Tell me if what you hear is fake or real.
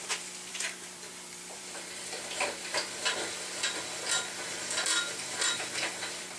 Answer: fake